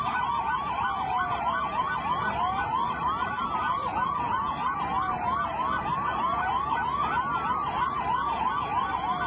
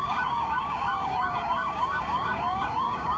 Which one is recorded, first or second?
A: first